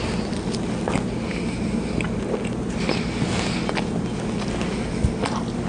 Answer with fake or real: real